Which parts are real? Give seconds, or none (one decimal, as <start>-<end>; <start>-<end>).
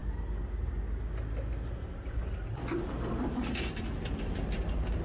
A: 0.0-5.0